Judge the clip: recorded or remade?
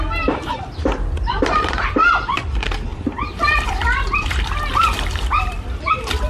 remade